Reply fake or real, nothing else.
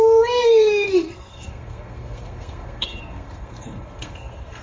fake